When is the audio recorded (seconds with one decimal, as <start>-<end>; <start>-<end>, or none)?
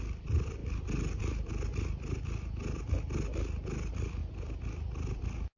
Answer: 0.0-5.6